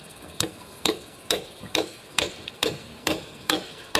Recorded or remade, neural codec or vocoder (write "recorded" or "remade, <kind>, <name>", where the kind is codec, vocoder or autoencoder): remade, codec, SNAC